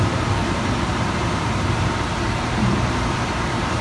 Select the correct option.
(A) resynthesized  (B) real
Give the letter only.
A